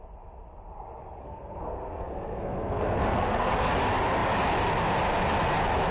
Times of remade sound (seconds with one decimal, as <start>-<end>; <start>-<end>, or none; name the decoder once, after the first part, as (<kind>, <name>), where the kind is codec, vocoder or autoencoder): 1.2-3.7 (codec, SNAC)